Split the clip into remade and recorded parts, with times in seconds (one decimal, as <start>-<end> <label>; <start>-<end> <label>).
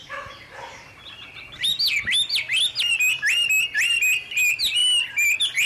0.0-1.7 remade; 1.7-5.7 recorded